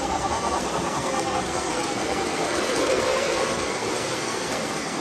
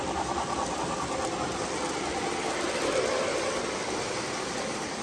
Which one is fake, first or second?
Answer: first